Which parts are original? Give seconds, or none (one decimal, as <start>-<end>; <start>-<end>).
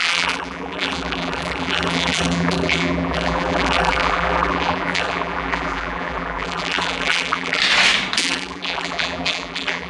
7.6-8.2